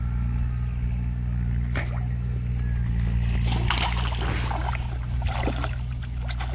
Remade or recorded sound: recorded